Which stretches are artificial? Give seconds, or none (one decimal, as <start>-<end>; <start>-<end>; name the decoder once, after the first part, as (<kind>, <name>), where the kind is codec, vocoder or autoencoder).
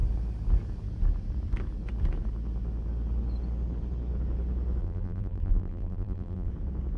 4.8-6.5 (vocoder, BigVGAN v2)